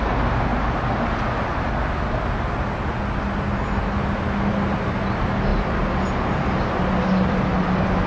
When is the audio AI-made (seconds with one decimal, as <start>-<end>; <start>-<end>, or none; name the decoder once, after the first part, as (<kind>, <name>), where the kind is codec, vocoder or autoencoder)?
none